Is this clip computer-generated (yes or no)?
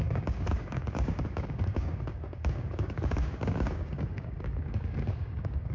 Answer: yes